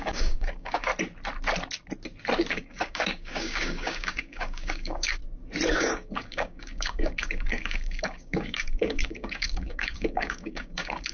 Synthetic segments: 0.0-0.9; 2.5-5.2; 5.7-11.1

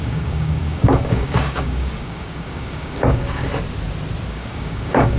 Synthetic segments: 0.0-3.5; 4.3-5.2

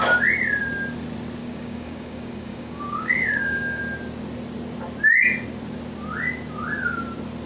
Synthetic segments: 1.4-3.8

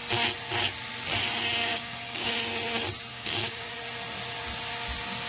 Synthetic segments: 1.6-2.3; 3.1-3.7

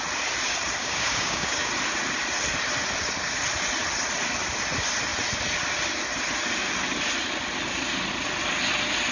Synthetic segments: 0.8-1.7

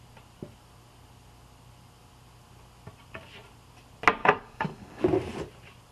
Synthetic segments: 4.2-5.0

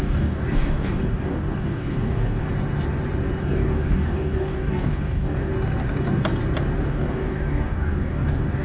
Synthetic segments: 0.0-2.4; 3.4-5.5; 6.9-8.6

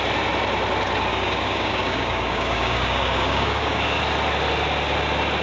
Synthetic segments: 1.1-4.0